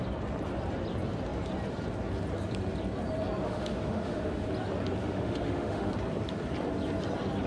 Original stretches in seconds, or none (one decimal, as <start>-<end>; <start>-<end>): 0.0-3.4; 4.5-5.0; 5.9-7.5